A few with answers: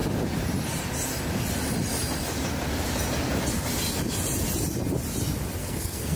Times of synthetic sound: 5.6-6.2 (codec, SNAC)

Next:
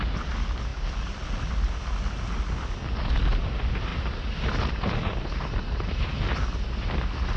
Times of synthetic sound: none

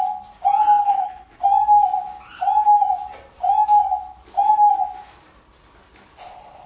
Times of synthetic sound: 0.8-1.4 (codec, HILCodec)

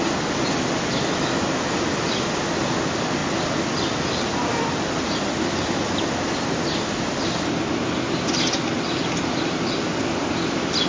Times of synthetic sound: 3.2-7.5 (vocoder, BigVGAN v2)

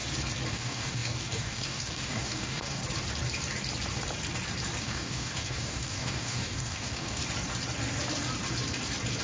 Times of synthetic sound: 0.5-2.8 (codec, DAC); 4.8-7.2

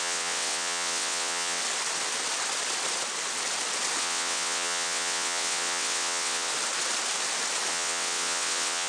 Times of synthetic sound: 0.0-1.6 (vocoder, WaveNeXt); 4.0-6.5; 7.7-8.9

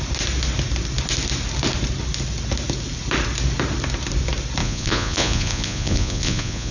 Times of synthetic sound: 4.6-6.7 (vocoder, Vocos)

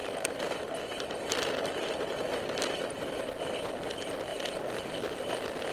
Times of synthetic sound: none